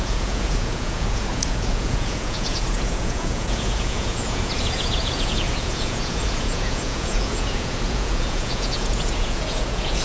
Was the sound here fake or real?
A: fake